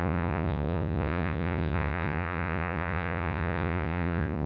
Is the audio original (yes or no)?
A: no